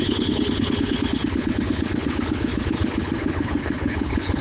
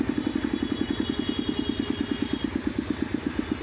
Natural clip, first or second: second